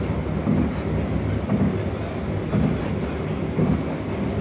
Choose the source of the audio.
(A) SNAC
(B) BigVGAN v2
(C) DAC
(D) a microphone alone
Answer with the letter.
D